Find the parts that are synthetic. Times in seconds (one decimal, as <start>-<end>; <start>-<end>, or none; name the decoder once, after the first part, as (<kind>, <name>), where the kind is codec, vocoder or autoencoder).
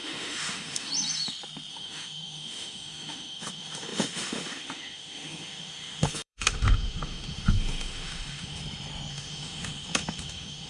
0.0-0.9 (autoencoder, DAC-VAE); 1.7-8.6; 9.1-10.7